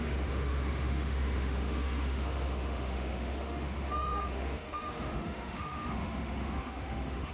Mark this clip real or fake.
fake